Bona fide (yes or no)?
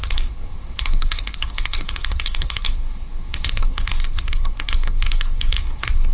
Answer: no